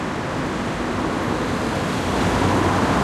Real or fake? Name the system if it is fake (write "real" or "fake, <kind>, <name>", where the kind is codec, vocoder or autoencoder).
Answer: real